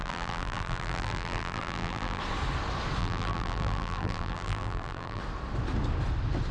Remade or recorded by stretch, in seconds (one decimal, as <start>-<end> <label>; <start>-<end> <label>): 0.0-2.2 remade; 2.2-3.0 recorded; 3.0-5.2 remade; 5.2-6.5 recorded